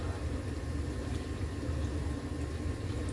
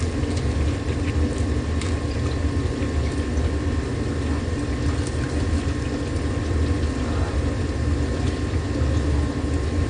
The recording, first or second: second